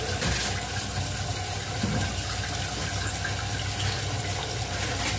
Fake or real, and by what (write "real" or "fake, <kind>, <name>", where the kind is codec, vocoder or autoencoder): real